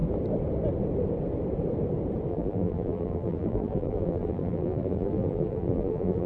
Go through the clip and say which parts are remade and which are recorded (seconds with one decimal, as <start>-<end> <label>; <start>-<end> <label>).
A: 0.0-2.3 recorded; 2.3-6.3 remade

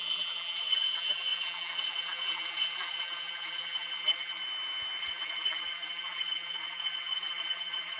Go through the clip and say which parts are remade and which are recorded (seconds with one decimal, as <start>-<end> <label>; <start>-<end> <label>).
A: 0.0-4.4 remade; 4.4-5.0 recorded; 5.0-8.0 remade